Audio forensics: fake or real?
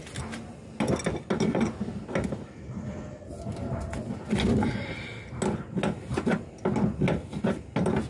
real